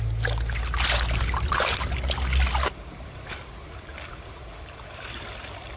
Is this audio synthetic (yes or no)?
no